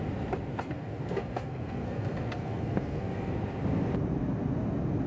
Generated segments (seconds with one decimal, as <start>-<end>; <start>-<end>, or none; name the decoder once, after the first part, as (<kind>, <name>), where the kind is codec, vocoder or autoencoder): 0.5-3.3 (codec, SNAC)

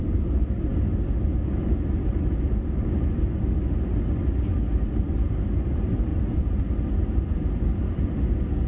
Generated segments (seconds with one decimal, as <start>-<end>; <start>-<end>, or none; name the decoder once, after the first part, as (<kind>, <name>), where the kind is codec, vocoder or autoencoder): none